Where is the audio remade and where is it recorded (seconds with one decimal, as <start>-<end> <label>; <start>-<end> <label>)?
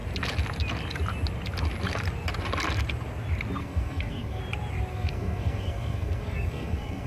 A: 0.0-3.6 recorded; 3.6-4.4 remade; 4.4-4.9 recorded; 4.9-7.1 remade